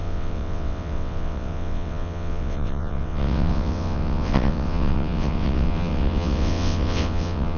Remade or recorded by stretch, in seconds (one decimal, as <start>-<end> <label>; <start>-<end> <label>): 0.0-7.6 remade